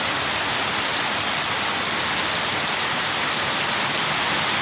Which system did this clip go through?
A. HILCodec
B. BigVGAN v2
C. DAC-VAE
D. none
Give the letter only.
D